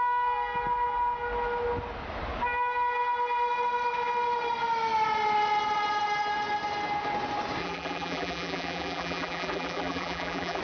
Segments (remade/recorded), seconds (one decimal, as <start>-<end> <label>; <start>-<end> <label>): 0.0-7.6 recorded; 7.6-10.6 remade